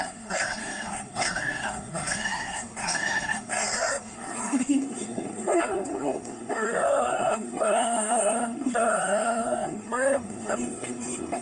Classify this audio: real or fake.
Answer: fake